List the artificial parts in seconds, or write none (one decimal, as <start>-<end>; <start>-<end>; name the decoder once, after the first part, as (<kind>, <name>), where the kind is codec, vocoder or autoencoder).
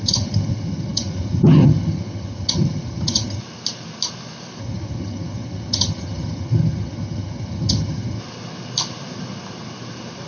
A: 0.0-3.4 (vocoder, HiFi-GAN); 4.6-8.2